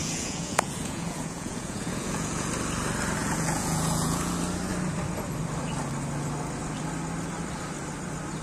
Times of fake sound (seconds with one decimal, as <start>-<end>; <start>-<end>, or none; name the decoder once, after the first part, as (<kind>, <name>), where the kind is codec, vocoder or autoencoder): 0.0-2.5 (vocoder, Vocos); 3.2-4.3